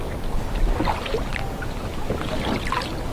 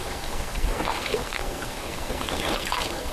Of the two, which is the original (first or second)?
first